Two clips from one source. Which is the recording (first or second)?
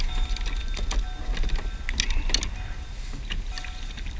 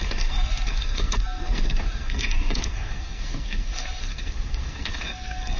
first